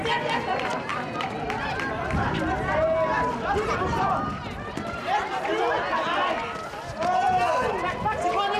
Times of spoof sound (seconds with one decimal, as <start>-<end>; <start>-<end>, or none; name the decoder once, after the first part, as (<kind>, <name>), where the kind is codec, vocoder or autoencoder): none